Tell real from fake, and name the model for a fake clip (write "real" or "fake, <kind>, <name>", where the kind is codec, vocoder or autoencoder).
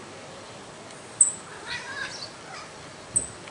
real